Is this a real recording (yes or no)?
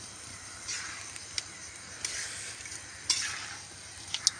yes